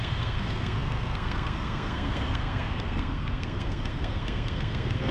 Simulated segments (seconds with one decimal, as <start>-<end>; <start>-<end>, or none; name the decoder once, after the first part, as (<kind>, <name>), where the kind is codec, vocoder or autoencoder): 0.0-5.1 (codec, SNAC)